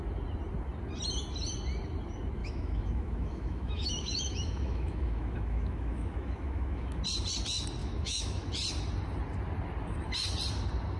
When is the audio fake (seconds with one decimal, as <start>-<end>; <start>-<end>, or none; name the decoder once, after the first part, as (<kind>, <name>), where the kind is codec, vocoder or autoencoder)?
2.4-7.0 (autoencoder, DAC-VAE); 7.8-8.5